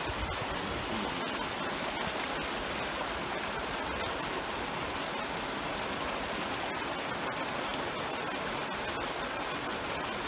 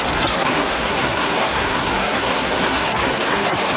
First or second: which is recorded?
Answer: first